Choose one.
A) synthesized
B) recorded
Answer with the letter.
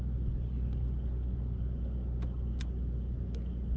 B